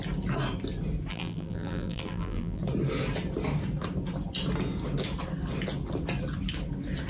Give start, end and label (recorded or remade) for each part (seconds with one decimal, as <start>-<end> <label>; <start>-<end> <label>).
0.0-1.1 recorded; 1.1-2.6 remade; 2.6-7.1 recorded